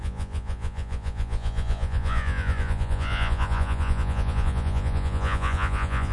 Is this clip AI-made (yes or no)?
yes